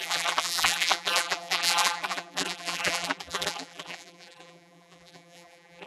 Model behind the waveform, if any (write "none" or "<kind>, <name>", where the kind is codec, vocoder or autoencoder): vocoder, BigVGAN v2